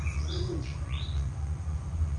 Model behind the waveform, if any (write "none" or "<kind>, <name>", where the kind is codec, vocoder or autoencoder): vocoder, Vocos